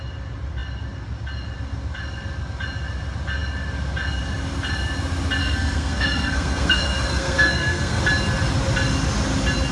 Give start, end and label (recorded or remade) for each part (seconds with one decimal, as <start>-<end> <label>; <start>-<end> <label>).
0.0-5.4 recorded; 5.4-8.0 remade; 8.0-9.7 recorded